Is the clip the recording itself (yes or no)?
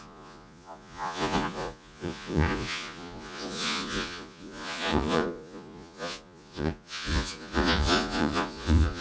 no